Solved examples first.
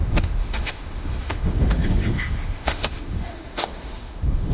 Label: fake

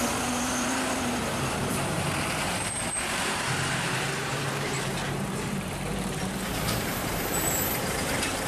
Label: fake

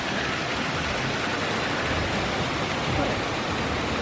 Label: real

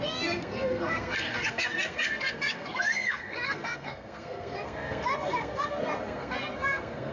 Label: fake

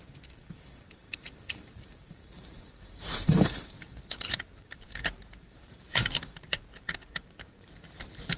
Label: fake